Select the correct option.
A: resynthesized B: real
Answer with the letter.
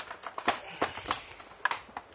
B